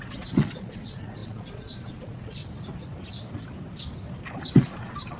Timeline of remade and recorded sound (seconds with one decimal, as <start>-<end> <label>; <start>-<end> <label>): 0.0-2.4 remade; 2.4-4.6 recorded; 4.6-5.2 remade